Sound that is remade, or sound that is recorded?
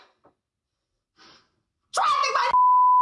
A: recorded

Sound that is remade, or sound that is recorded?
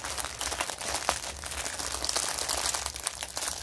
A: recorded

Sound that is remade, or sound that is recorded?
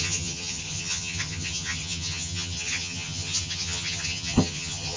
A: remade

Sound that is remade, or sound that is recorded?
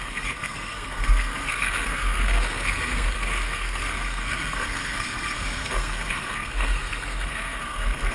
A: remade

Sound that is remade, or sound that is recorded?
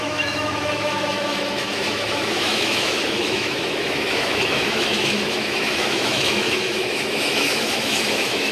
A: remade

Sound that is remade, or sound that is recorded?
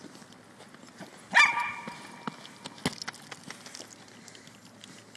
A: recorded